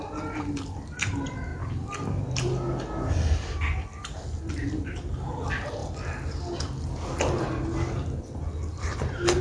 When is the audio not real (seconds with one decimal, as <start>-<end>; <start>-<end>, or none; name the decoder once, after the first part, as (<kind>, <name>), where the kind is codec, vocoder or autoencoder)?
none